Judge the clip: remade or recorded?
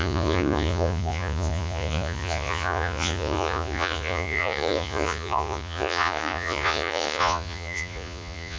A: remade